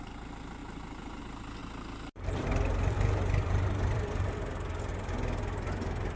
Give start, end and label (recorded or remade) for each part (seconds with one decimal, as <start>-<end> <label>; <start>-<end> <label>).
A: 0.0-4.9 remade; 4.9-6.2 recorded